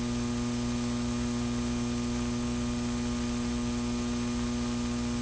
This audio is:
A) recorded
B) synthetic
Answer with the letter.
A